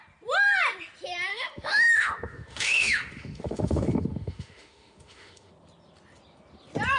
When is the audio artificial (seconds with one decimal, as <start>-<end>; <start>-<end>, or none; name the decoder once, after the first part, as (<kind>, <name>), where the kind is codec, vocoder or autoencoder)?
1.3-5.5 (autoencoder, DAC-VAE)